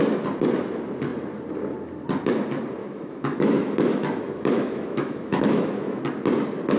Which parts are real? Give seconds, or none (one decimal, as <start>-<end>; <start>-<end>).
0.0-2.8; 6.0-6.8